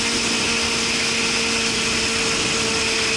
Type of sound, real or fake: real